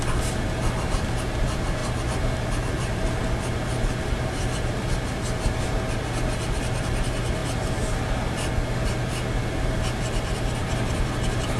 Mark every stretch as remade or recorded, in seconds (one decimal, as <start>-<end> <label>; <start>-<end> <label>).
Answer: 0.0-11.6 recorded